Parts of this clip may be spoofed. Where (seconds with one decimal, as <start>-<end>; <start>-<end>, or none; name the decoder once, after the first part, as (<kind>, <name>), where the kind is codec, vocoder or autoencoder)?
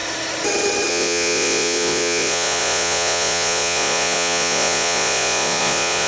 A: 0.9-6.1 (vocoder, Vocos)